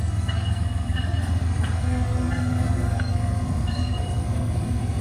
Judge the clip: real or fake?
fake